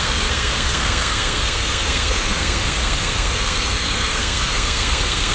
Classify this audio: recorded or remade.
remade